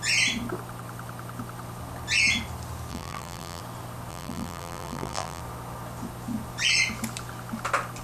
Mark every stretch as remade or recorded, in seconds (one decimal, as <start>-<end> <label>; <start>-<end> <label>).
0.0-2.9 recorded; 2.9-3.6 remade; 3.6-4.1 recorded; 4.1-5.4 remade; 5.4-8.0 recorded